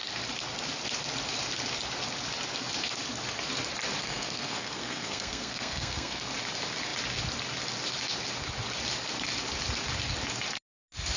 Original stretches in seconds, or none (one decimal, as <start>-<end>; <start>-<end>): 0.0-4.0; 6.2-11.2